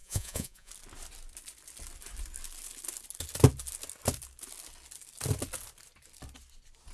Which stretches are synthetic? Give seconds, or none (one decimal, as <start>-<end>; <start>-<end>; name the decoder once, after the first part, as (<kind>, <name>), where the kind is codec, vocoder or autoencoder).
0.0-0.7 (vocoder, Vocos)